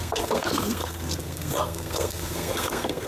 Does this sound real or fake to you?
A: fake